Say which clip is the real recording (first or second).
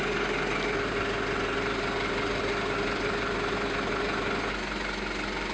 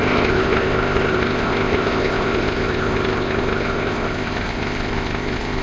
first